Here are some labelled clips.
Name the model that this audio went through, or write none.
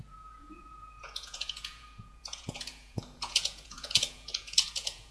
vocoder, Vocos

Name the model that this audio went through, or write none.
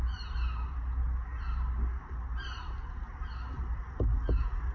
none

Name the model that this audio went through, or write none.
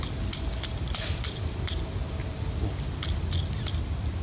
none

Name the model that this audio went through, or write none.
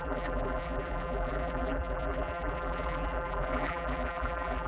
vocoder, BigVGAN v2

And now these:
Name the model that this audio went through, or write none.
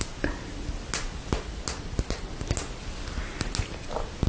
none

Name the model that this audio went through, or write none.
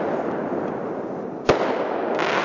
none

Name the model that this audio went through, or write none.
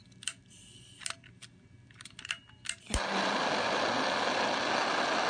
none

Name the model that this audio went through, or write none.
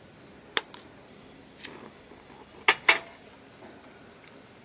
none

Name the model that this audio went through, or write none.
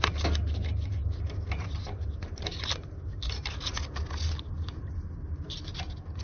none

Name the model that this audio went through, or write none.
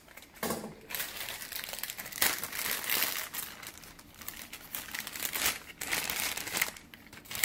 none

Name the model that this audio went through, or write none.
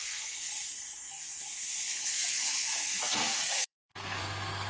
codec, SNAC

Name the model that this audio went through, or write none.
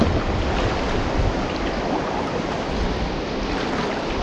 none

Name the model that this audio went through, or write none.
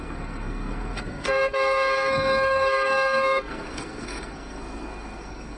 codec, SNAC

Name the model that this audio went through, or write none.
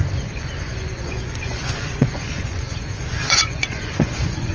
vocoder, Vocos